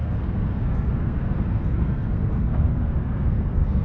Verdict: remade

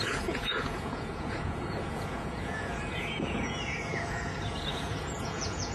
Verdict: remade